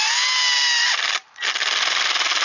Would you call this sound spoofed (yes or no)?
no